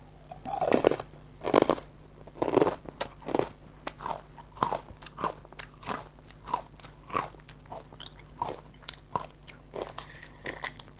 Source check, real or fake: fake